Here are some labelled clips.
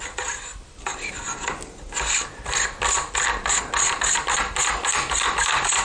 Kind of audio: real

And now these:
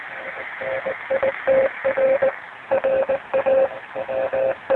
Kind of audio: real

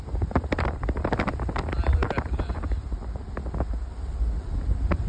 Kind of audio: fake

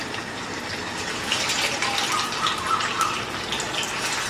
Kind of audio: fake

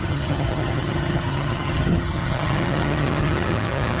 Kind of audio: fake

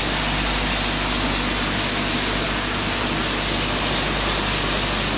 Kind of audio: real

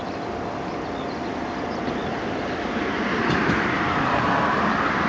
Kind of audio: real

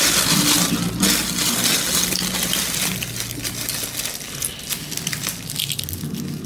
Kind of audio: real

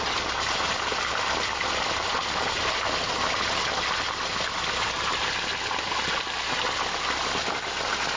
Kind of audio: real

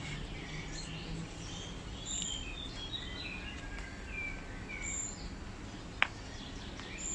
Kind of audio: real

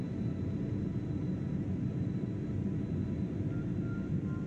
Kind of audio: real